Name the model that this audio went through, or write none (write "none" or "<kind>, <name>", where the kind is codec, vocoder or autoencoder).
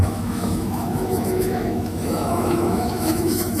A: autoencoder, DAC-VAE